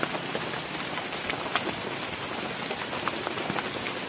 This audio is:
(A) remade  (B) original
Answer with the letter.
B